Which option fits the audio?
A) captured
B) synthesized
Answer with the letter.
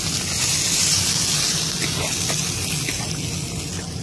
A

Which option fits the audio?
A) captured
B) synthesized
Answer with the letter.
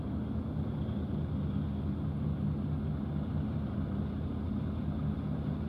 A